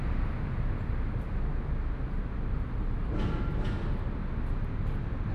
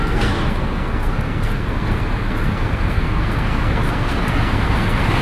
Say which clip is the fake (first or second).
second